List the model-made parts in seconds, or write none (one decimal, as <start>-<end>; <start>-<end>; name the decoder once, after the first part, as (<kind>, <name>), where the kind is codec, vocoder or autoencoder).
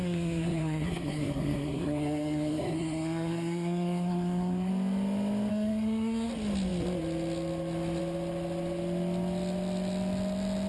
0.0-4.7 (codec, SNAC); 5.5-6.3